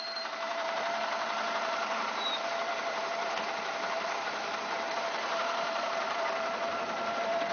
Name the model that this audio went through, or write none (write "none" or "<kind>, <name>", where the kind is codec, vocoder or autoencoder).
vocoder, BigVGAN v2